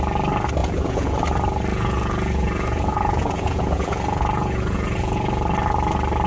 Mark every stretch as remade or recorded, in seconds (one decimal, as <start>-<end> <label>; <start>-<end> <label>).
0.0-0.6 recorded; 0.6-1.2 remade; 1.2-1.7 recorded; 1.7-5.3 remade; 5.3-6.3 recorded